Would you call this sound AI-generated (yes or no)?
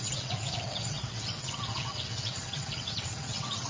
yes